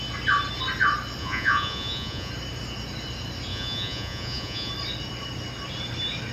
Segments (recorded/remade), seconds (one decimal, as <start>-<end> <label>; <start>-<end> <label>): 0.0-1.2 recorded; 1.2-2.3 remade; 2.3-3.5 recorded; 3.5-4.7 remade; 4.7-6.3 recorded